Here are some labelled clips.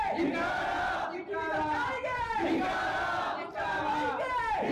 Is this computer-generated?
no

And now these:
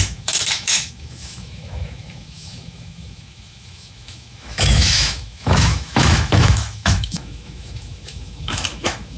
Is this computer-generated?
yes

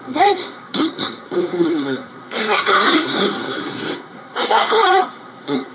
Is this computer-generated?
yes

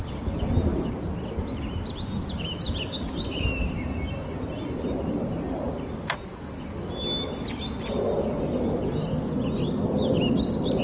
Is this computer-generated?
no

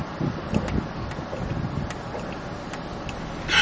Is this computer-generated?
no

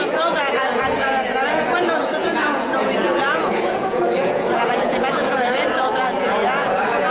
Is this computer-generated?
yes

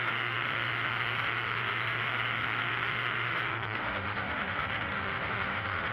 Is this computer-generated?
yes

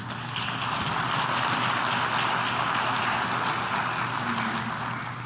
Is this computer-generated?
no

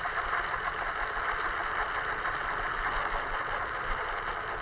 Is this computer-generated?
no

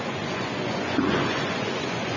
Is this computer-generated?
yes